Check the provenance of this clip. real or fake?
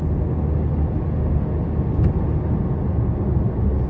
real